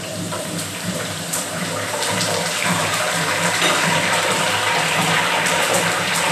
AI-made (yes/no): yes